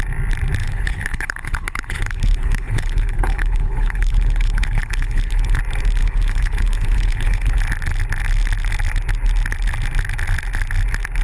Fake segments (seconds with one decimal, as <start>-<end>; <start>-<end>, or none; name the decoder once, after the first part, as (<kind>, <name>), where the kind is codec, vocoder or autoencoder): 0.6-5.6 (codec, HILCodec); 6.0-7.6